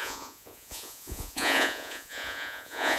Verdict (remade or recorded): remade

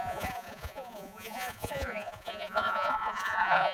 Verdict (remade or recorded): remade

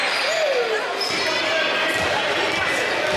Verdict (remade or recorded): recorded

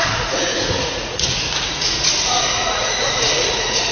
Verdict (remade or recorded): remade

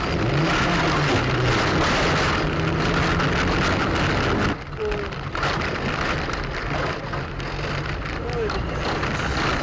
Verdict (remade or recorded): recorded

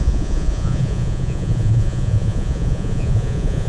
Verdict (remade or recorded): remade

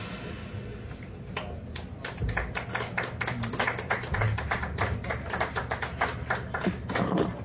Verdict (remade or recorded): recorded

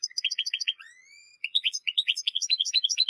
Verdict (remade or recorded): remade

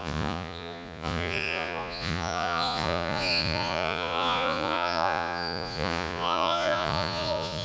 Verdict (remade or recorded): remade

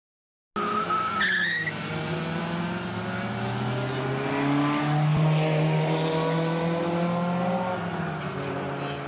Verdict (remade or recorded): recorded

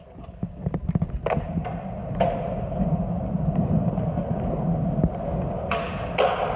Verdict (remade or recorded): recorded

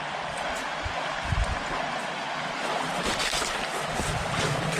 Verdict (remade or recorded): recorded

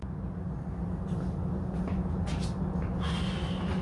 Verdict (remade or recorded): recorded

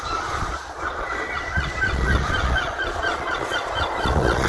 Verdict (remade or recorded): remade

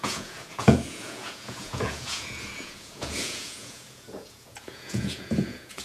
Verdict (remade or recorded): remade